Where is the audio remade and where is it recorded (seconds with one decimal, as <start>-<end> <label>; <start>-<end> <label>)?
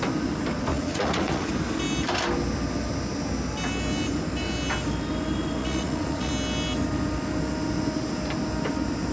0.0-0.7 recorded; 0.7-1.5 remade; 1.5-5.6 recorded; 5.6-6.3 remade; 6.3-9.1 recorded